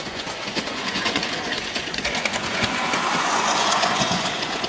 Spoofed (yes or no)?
yes